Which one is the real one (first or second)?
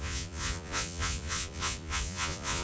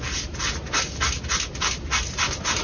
second